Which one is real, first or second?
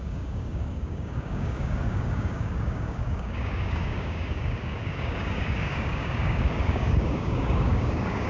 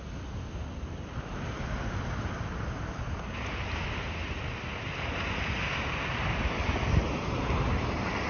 second